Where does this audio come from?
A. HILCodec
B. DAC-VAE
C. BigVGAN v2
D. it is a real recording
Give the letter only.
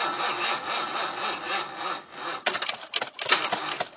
D